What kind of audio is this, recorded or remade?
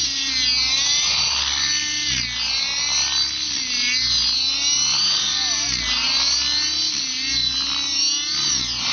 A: recorded